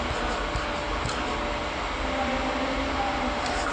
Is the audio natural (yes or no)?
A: yes